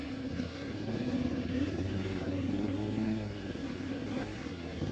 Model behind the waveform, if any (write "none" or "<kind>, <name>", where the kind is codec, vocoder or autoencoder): codec, SNAC